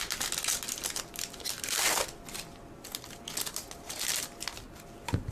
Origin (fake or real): real